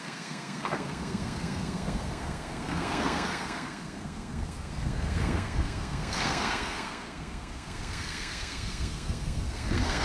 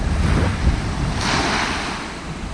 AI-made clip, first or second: first